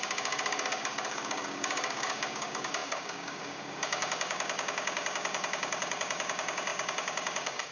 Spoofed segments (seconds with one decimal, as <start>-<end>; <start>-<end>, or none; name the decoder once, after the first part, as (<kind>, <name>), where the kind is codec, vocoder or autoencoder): 0.0-7.7 (codec, DAC)